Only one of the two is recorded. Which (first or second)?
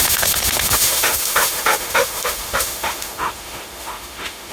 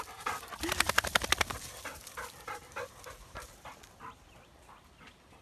second